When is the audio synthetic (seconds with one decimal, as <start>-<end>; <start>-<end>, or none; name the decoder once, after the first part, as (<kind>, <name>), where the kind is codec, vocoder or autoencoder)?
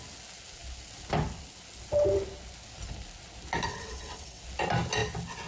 3.7-4.4 (vocoder, WaveNeXt)